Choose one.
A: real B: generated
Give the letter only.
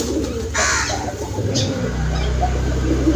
A